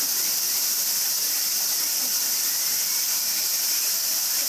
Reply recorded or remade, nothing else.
recorded